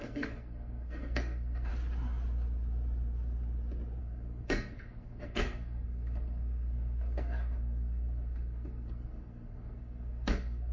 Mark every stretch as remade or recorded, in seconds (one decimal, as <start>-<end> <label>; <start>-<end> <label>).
0.0-1.7 remade; 1.7-4.0 recorded; 4.0-10.7 remade